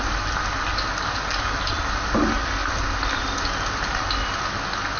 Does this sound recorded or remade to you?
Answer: recorded